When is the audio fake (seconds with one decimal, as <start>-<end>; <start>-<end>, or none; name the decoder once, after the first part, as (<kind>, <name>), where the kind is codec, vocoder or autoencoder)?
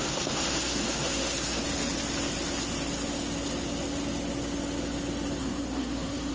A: 0.0-1.6 (codec, SNAC); 5.4-6.3